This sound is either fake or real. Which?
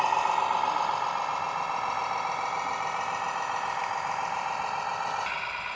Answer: real